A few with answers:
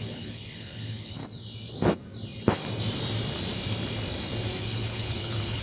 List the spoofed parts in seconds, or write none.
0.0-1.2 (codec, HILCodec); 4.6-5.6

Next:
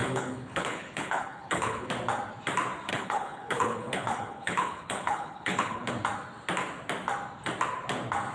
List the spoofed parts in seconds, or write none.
0.0-1.9 (codec, HILCodec); 2.9-5.9

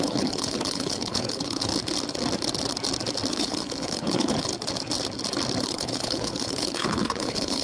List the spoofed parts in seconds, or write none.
0.0-1.7 (codec, HILCodec); 3.3-4.5; 5.6-7.6

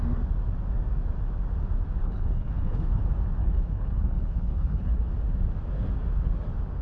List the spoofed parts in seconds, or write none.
2.0-3.0 (codec, HILCodec); 3.4-5.1